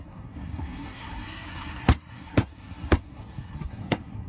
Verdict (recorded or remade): remade